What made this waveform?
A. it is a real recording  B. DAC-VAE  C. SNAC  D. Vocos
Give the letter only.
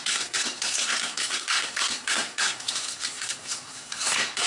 C